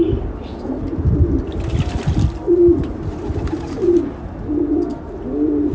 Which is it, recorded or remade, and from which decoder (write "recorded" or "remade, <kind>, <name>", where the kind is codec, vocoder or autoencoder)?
recorded